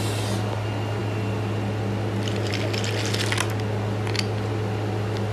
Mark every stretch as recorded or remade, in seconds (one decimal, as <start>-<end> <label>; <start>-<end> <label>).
0.0-5.3 recorded